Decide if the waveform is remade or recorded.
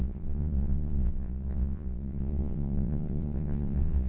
remade